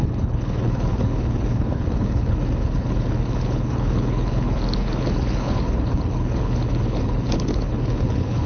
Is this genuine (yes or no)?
no